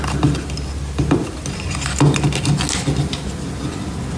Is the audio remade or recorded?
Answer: recorded